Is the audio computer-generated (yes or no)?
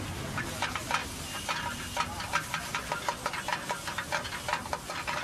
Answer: no